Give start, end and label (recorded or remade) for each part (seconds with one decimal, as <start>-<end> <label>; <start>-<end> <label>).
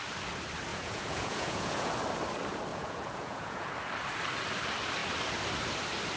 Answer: 0.0-0.7 recorded; 0.7-1.9 remade; 1.9-2.7 recorded; 2.7-3.7 remade; 3.7-6.2 recorded